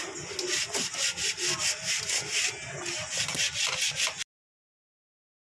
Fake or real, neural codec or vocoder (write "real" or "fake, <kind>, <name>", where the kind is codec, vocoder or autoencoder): real